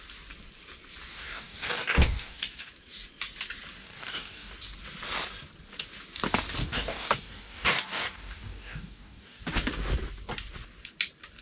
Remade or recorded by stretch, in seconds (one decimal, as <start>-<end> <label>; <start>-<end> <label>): 0.0-1.1 recorded; 1.1-2.7 remade; 2.7-3.8 recorded; 3.8-4.5 remade; 4.5-6.6 recorded; 6.6-9.4 remade; 9.4-11.4 recorded